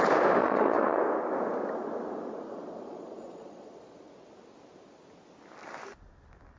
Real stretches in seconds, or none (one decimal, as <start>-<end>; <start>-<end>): 0.0-0.4; 1.0-2.5; 4.1-6.6